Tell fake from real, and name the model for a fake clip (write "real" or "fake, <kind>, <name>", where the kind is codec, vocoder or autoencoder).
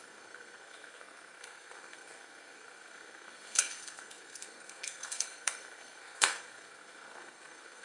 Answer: fake, codec, SNAC